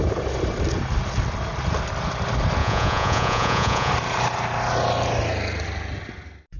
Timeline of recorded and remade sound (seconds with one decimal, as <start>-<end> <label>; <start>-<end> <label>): 0.0-2.6 recorded; 2.6-3.9 remade; 3.9-6.6 recorded